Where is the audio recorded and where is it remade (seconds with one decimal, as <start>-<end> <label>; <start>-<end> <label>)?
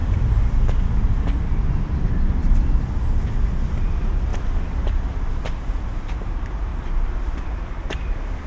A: 0.0-3.8 recorded; 3.8-4.3 remade; 4.3-4.8 recorded; 4.8-6.7 remade; 6.7-7.9 recorded; 7.9-8.5 remade